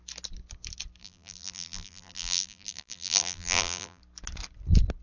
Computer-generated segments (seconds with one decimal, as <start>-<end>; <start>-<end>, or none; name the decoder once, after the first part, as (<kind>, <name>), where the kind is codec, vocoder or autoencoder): 1.0-4.0 (vocoder, BigVGAN v2)